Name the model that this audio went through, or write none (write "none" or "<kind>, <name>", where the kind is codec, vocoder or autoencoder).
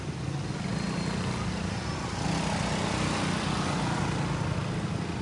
none